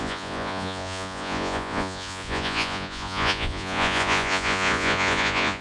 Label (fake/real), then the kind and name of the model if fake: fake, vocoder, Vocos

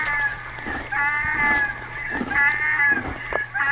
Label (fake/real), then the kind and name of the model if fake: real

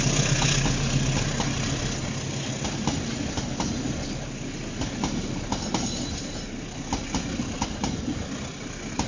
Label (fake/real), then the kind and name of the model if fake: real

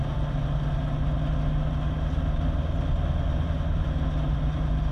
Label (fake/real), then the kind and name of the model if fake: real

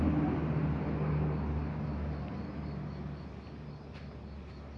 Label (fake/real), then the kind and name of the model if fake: real